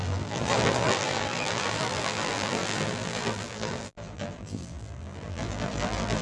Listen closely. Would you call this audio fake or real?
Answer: fake